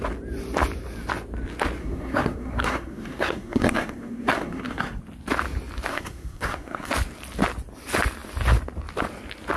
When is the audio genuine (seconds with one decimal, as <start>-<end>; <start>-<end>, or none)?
0.0-1.8; 5.0-5.9; 6.9-9.6